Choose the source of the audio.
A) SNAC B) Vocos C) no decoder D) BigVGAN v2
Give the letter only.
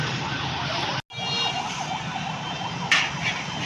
C